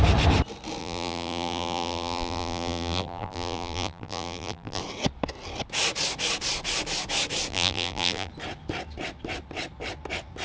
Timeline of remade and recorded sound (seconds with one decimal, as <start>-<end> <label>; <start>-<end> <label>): 0.0-0.8 recorded; 0.8-4.8 remade; 4.8-7.5 recorded; 7.5-8.3 remade; 8.3-10.4 recorded